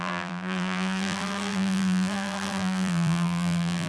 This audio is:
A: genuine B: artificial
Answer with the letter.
B